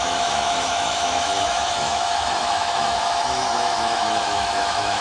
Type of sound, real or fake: fake